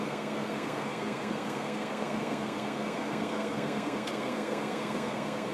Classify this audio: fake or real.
fake